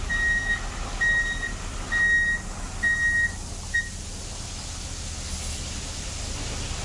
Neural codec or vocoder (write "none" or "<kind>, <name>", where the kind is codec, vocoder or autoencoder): none